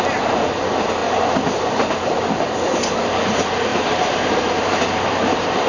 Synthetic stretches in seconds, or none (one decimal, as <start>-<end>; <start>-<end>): none